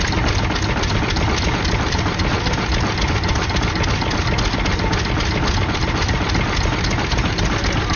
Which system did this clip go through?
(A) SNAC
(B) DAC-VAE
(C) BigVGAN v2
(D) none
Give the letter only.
D